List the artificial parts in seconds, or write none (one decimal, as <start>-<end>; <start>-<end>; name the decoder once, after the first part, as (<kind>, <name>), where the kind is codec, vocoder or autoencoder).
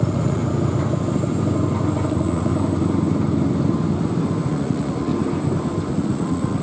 0.0-0.4 (vocoder, Vocos); 2.1-2.5; 4.5-5.1; 5.9-6.6